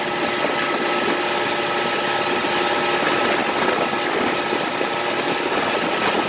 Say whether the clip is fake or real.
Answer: real